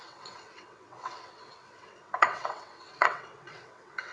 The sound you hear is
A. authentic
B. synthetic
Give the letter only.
B